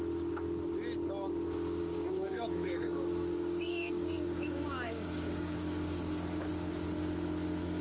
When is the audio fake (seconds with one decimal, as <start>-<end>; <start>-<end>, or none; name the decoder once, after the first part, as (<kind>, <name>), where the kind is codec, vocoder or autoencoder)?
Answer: 1.8-6.0 (codec, DAC)